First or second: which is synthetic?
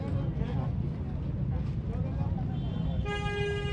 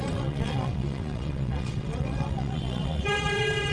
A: second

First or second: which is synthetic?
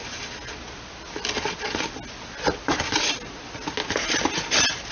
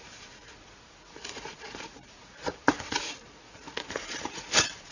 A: second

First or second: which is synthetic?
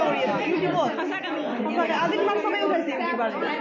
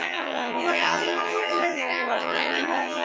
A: second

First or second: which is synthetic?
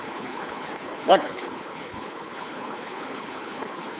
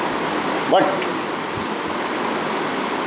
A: first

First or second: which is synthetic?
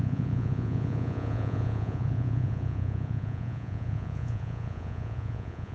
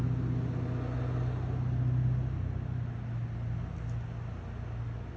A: first